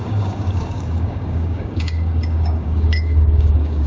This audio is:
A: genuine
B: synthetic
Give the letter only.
B